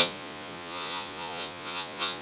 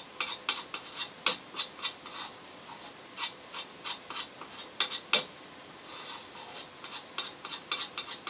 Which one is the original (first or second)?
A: second